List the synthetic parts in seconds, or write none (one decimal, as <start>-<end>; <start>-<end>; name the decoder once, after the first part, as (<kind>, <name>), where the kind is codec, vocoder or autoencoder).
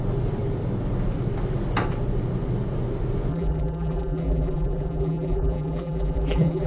3.3-6.7 (vocoder, BigVGAN v2)